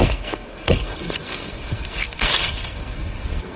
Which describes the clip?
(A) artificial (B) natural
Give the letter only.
A